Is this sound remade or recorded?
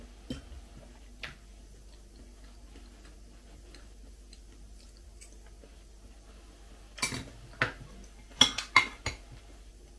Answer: recorded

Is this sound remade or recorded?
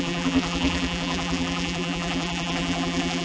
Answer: remade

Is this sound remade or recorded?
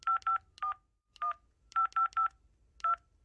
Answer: remade